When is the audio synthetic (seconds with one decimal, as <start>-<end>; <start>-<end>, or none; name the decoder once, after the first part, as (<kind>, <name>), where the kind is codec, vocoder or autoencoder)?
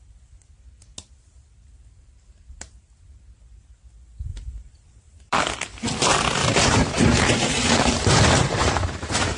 4.3-5.4 (vocoder, BigVGAN v2); 6.4-9.4